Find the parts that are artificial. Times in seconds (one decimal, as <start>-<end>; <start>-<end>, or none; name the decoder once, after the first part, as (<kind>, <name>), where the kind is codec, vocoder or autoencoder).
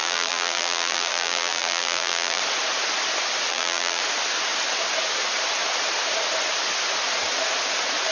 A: 0.0-2.4 (vocoder, BigVGAN v2); 3.5-4.0